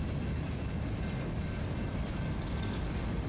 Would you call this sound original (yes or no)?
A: yes